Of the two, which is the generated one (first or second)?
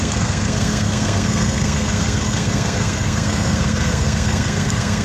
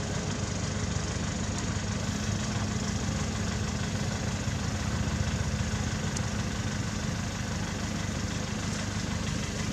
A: first